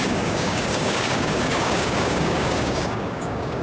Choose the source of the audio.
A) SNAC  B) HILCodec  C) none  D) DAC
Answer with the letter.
D